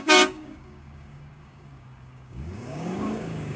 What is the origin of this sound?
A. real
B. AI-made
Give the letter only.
B